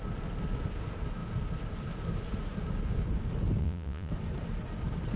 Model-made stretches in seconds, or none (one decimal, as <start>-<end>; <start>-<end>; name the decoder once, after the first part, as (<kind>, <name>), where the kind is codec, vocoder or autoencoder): 3.6-4.1 (vocoder, Vocos)